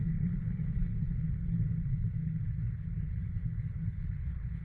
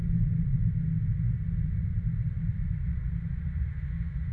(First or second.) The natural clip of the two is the second